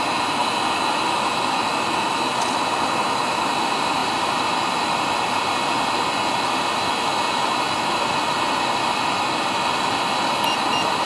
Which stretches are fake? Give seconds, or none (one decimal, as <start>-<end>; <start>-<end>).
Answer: none